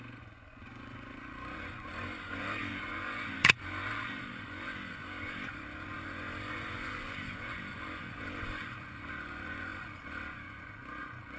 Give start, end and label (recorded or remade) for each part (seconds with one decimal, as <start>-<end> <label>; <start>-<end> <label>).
0.0-11.4 remade